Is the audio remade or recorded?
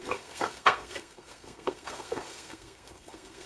remade